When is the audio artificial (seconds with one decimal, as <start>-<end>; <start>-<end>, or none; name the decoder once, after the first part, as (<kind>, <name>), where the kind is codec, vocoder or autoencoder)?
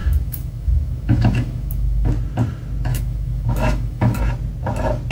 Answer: 0.0-2.1 (autoencoder, DAC-VAE); 2.9-4.2